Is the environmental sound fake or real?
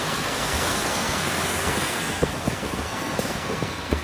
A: fake